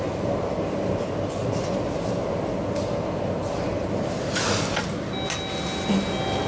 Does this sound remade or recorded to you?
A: recorded